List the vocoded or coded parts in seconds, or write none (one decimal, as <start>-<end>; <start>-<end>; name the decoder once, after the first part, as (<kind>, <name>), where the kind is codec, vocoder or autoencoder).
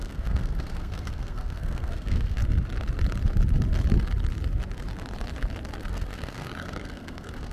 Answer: 0.0-2.4 (codec, SNAC); 5.9-7.5